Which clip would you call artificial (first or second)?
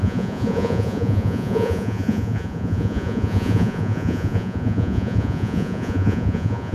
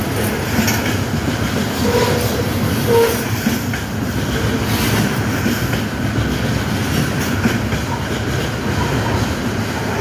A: first